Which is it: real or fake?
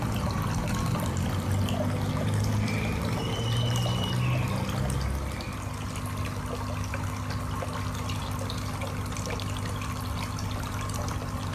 real